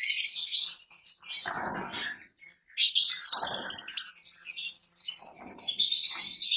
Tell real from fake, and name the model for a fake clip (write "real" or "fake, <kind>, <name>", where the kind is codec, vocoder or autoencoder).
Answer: fake, vocoder, BigVGAN v2